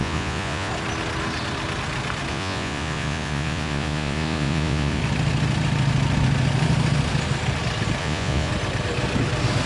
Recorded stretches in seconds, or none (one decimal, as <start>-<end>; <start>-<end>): 0.7-2.3; 5.0-8.0; 8.5-9.7